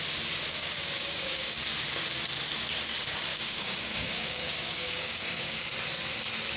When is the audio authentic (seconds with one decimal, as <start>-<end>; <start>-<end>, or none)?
0.0-0.5; 1.6-3.3; 5.7-6.6